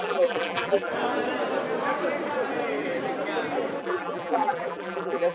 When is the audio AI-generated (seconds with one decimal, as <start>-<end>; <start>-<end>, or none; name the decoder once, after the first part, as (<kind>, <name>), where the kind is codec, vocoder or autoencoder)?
0.0-0.9 (vocoder, BigVGAN v2); 3.8-5.3